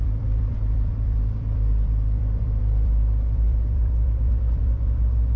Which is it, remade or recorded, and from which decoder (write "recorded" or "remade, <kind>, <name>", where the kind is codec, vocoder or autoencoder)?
remade, vocoder, BigVGAN v2